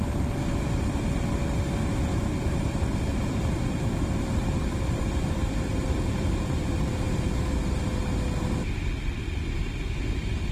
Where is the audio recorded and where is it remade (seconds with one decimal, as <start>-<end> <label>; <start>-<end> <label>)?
0.0-2.1 recorded; 2.1-7.3 remade; 7.3-10.5 recorded